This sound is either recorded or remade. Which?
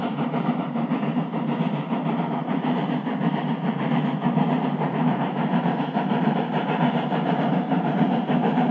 remade